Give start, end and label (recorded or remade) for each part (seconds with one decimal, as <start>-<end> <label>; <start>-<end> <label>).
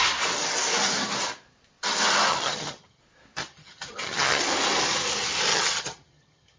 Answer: 0.0-2.3 recorded; 2.3-3.0 remade; 3.0-3.4 recorded; 3.4-4.4 remade; 4.4-5.5 recorded; 5.5-6.6 remade